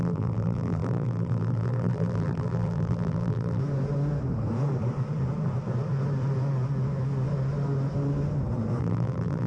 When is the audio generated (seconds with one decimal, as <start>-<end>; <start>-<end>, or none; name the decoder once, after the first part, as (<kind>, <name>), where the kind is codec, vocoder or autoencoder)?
0.0-3.6 (vocoder, BigVGAN v2); 8.8-9.5